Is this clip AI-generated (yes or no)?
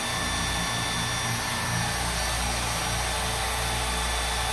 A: no